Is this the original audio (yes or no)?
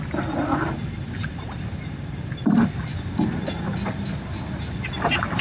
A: yes